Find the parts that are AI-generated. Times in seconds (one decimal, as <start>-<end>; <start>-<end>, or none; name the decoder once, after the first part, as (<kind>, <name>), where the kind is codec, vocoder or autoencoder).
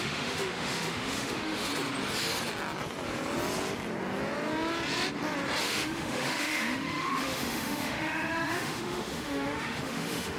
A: 0.0-1.7 (autoencoder, DAC-VAE); 5.6-10.4